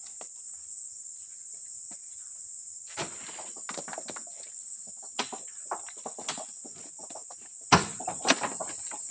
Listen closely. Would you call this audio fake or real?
real